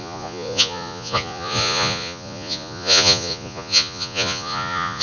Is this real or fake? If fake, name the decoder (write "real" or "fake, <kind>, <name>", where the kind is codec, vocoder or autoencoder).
fake, vocoder, Vocos